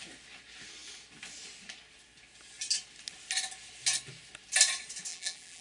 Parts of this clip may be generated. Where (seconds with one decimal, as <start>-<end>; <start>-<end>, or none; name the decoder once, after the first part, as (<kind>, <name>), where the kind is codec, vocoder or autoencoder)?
5.1-5.6 (vocoder, BigVGAN v2)